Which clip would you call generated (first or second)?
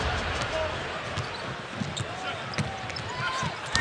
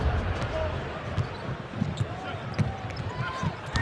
second